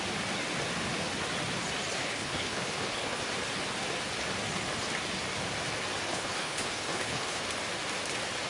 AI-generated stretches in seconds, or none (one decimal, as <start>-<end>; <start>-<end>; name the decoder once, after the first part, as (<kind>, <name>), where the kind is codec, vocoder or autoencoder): 2.0-3.2 (codec, HILCodec); 6.1-7.4